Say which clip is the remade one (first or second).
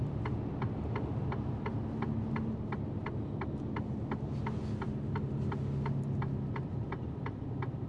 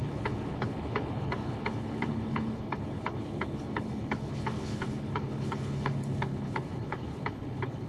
second